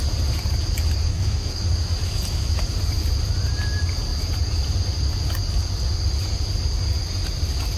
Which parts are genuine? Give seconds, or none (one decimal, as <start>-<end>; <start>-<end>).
0.0-1.1; 1.6-7.8